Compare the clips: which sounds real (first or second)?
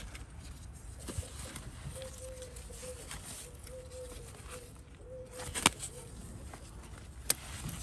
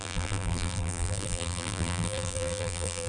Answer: first